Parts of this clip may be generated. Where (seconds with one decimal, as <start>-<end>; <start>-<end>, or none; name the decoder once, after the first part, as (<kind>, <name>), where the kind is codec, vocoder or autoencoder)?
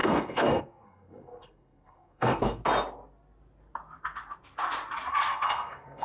0.0-2.6 (codec, SNAC); 5.1-6.0